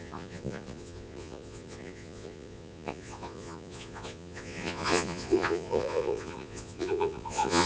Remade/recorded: remade